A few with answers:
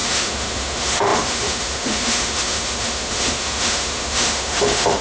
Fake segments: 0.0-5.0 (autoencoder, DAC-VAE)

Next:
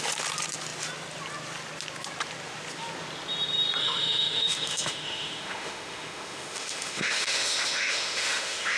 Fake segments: 3.8-8.8 (autoencoder, DAC-VAE)

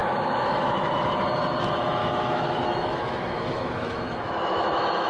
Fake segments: 0.0-0.9 (autoencoder, DAC-VAE); 2.0-5.1

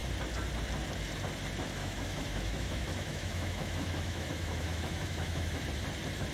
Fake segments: 1.8-5.6 (autoencoder, DAC-VAE)

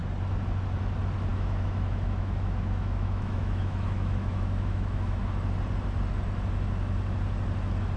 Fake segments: 1.3-5.2 (autoencoder, DAC-VAE)

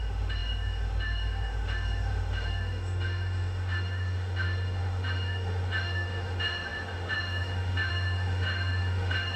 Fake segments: 0.0-9.4 (autoencoder, DAC-VAE)